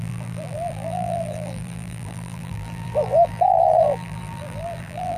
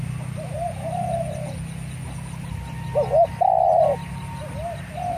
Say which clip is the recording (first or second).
second